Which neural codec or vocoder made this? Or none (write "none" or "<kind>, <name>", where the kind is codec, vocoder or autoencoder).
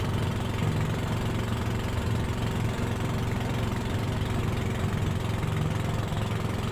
none